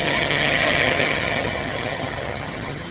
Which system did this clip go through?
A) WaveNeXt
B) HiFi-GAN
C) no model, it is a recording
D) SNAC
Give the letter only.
B